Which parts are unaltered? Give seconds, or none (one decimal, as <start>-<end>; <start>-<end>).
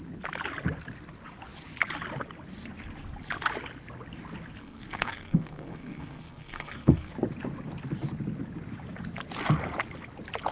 0.0-4.6; 7.1-10.5